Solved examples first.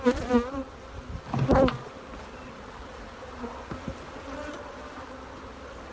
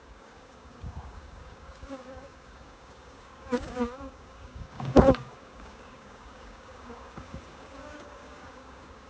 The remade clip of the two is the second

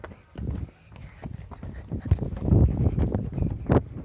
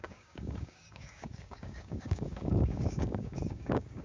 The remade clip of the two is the second